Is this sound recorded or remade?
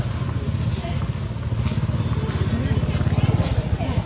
recorded